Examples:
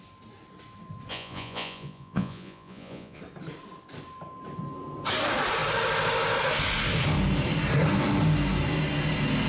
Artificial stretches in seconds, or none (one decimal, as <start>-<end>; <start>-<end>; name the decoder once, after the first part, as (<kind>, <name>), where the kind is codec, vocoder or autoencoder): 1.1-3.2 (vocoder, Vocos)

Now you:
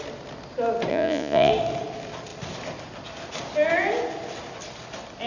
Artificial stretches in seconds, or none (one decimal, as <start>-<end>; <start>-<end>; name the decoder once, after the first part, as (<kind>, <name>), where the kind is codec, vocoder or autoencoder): 0.9-1.5 (vocoder, Vocos)

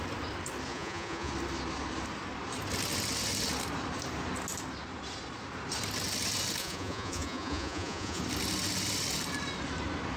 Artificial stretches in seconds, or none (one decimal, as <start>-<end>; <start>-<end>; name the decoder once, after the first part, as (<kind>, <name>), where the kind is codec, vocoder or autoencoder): 0.7-1.3 (vocoder, Vocos); 6.6-8.2

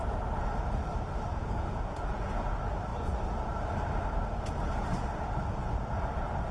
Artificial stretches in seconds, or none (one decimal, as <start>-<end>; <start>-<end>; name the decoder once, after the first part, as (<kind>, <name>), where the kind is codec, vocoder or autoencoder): 1.3-2.3 (vocoder, Vocos)